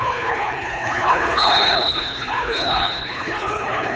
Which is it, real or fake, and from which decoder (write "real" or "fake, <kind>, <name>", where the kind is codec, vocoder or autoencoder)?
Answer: fake, codec, HILCodec